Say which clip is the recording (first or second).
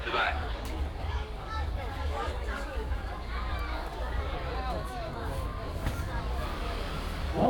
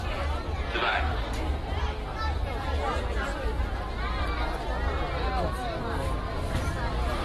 second